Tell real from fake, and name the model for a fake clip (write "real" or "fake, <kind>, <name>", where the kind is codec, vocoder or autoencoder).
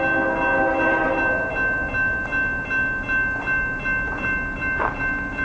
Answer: real